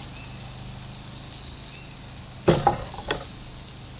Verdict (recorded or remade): recorded